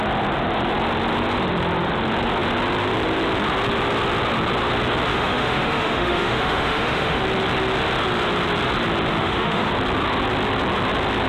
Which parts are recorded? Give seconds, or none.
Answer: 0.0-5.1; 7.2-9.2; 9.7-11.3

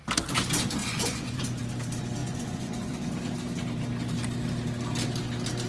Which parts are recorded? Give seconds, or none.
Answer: 0.0-0.8; 1.6-2.2; 3.1-5.7

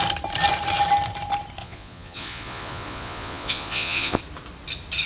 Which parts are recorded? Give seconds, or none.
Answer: 0.0-1.6; 4.2-5.1

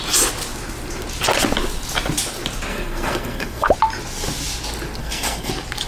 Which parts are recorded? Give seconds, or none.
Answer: 0.0-2.7; 3.7-5.0; 5.5-5.9